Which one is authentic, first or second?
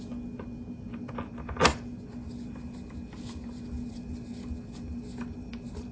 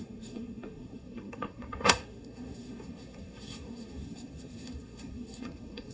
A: first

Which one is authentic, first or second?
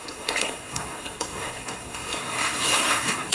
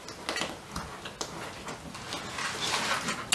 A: second